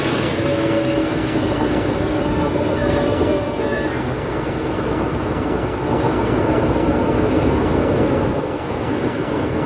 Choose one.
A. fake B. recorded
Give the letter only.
A